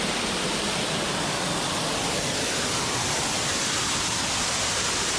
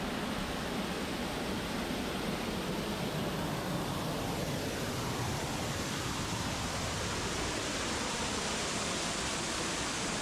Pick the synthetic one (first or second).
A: first